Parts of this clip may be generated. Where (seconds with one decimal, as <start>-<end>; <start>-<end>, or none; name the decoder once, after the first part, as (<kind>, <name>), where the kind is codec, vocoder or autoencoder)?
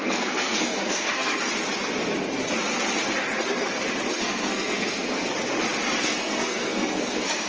0.0-1.3 (codec, SNAC); 4.2-5.3; 6.0-7.5